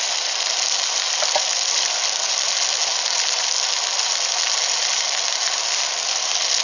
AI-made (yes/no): no